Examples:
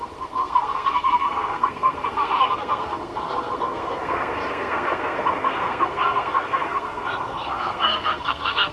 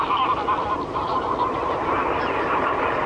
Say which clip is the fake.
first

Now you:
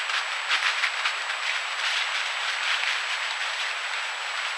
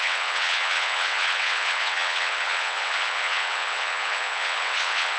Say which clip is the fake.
second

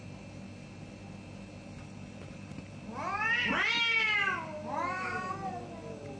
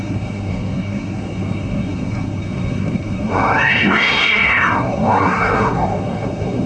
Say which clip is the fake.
second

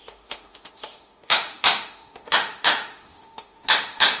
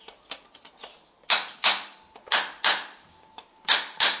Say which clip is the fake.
first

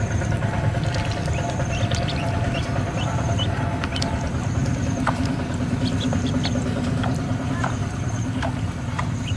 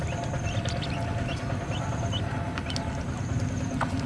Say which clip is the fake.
first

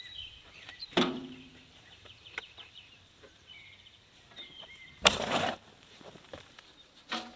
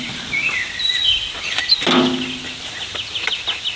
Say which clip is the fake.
first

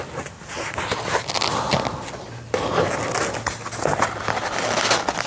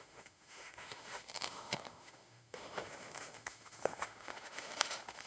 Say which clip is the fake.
second